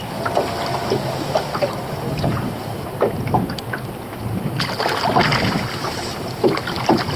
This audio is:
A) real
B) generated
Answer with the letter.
A